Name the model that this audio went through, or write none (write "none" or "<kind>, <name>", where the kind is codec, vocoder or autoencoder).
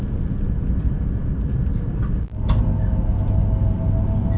none